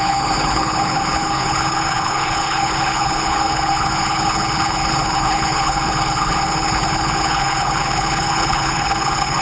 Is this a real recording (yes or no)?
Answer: no